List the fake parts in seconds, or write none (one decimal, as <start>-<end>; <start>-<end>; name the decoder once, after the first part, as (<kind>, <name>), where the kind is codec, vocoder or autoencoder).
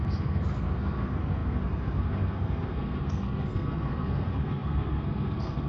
0.0-5.7 (codec, SNAC)